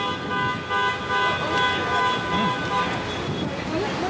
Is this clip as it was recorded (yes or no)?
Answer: yes